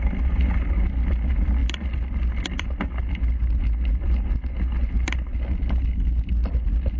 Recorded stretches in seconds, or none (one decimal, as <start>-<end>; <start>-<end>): 0.0-7.0